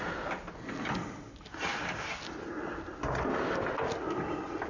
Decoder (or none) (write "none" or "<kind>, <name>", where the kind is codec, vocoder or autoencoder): none